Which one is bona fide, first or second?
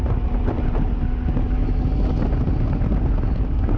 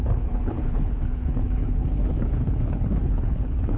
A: first